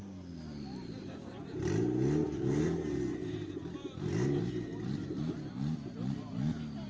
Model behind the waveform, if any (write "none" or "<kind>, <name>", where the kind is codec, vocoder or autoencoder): none